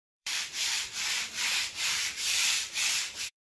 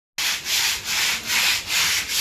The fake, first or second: first